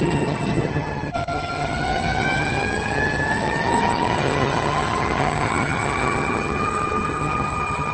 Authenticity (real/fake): fake